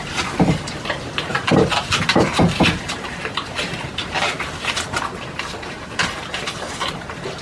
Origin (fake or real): real